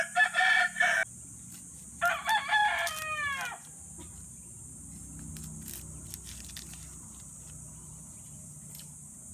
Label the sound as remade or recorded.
recorded